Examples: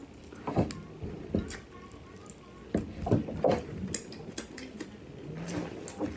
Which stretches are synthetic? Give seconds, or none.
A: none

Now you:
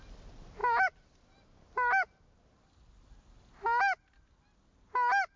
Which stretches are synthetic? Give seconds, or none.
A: none

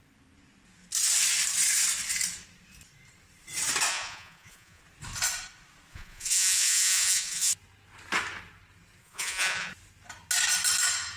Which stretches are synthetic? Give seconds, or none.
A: 3.9-4.8 (vocoder, Vocos); 5.9-7.5; 9.0-9.7

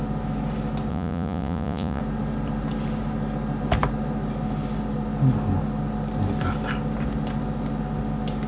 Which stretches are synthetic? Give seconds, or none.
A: 0.9-2.0 (vocoder, Vocos)

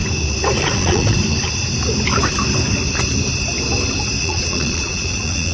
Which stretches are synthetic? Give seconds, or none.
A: 0.6-1.2 (vocoder, Vocos); 4.2-5.5

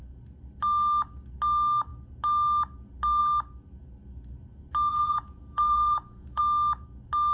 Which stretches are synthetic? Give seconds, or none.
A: 4.9-6.4 (vocoder, Vocos)

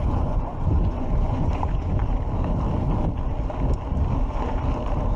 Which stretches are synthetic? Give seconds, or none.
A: 0.0-2.0 (vocoder, Vocos)

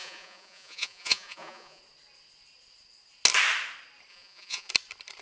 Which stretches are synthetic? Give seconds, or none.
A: 0.0-1.8 (vocoder, Vocos); 4.1-4.7